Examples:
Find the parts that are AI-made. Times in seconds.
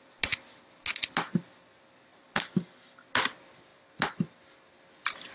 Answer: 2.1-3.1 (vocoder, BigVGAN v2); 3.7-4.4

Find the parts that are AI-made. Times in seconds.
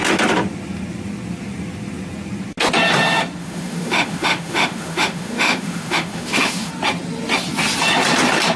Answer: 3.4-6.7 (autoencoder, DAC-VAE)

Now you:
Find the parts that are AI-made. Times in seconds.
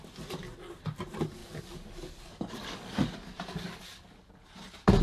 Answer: 1.4-4.1 (codec, DAC)